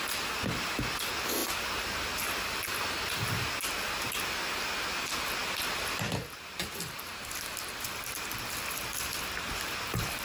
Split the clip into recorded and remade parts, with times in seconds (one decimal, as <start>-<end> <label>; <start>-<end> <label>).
0.0-10.2 recorded